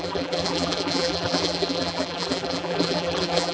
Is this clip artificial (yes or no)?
yes